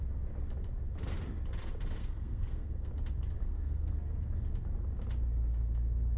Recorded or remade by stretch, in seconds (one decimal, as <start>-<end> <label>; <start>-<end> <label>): 0.0-2.0 recorded; 2.0-2.9 remade; 2.9-3.4 recorded; 3.4-3.9 remade; 3.9-6.2 recorded